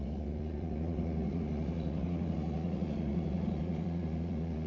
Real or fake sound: fake